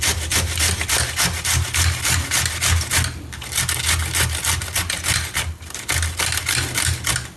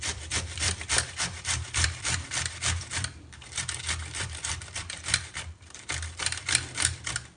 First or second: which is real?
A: first